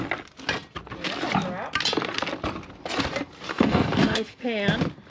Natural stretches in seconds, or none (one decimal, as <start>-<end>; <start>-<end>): 0.0-3.5; 4.4-5.1